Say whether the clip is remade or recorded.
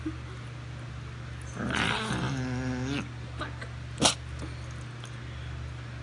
recorded